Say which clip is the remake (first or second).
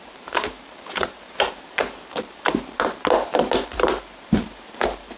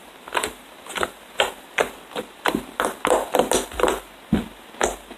first